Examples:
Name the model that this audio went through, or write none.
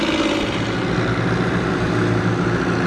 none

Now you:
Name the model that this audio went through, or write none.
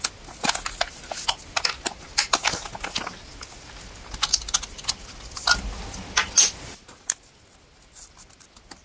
none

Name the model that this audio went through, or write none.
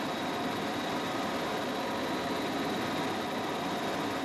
none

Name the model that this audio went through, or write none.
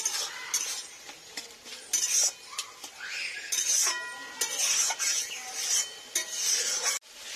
none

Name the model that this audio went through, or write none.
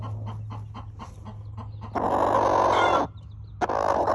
none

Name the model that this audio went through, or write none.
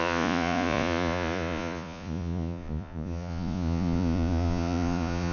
vocoder, Vocos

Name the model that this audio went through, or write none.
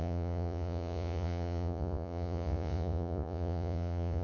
vocoder, Vocos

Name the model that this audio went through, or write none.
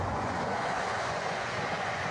vocoder, Vocos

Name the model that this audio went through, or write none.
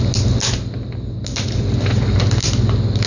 none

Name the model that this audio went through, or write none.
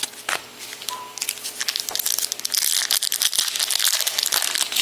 none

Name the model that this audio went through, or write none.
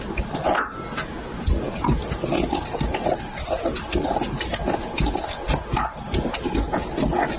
none